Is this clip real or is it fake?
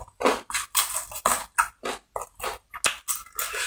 real